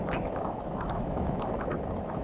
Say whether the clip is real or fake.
fake